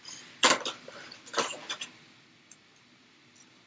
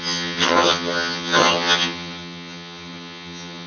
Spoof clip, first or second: second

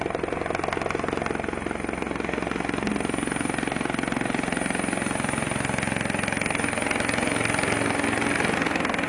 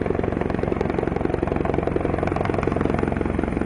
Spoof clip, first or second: second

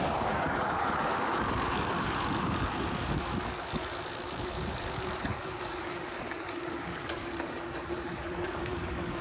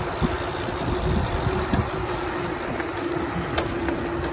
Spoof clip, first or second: first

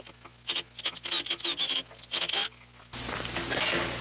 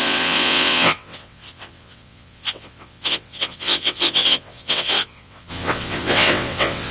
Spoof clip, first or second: second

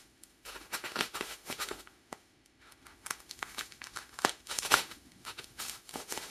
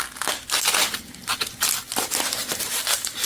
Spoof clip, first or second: first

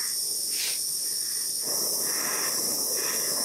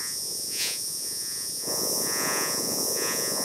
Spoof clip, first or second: second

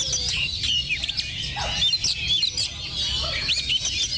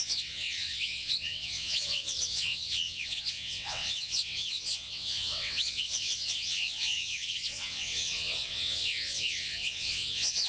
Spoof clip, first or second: second